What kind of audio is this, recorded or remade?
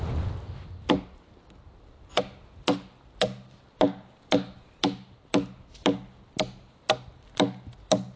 recorded